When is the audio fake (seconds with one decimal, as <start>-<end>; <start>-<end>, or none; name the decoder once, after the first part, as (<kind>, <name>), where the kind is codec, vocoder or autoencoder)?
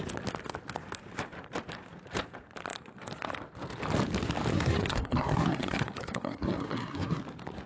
4.5-7.2 (codec, SNAC)